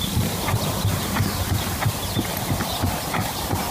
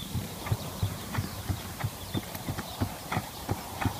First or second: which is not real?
second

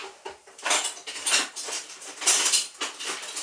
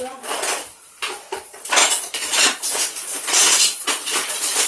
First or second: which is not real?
second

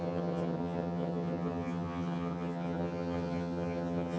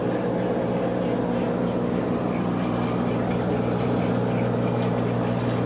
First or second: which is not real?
first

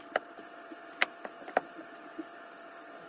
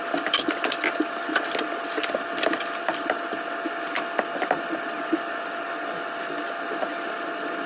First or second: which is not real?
first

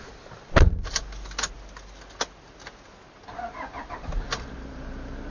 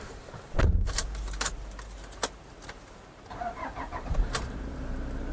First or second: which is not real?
second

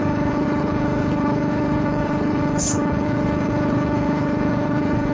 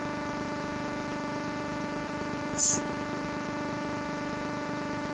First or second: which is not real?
first